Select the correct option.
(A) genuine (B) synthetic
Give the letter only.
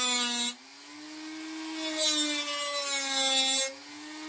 A